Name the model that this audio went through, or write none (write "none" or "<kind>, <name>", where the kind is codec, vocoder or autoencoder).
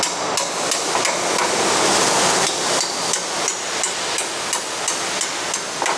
none